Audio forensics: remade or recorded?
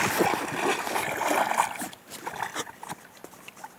recorded